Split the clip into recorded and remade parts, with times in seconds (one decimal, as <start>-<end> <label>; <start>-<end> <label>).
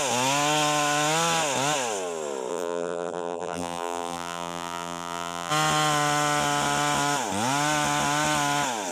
0.0-2.5 recorded; 2.5-5.5 remade; 5.5-8.9 recorded